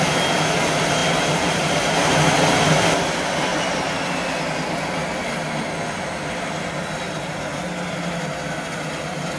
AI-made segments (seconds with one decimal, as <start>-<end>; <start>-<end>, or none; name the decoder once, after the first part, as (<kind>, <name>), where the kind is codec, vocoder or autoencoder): none